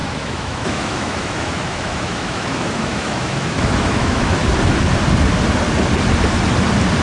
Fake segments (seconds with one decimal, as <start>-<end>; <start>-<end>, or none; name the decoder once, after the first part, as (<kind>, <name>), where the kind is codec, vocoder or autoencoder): 0.0-4.4 (autoencoder, DAC-VAE)